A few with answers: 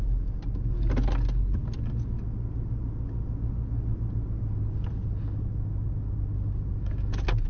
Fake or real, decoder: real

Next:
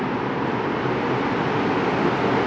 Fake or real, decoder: real